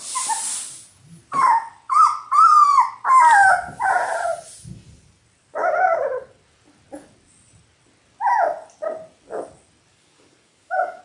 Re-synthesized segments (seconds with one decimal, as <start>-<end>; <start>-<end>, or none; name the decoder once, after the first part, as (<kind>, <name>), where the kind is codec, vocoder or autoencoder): 9.9-11.0 (codec, DAC)